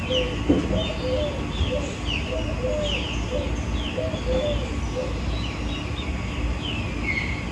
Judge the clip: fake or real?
real